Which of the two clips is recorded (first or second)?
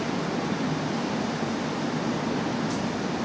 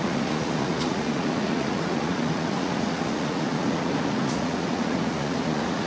first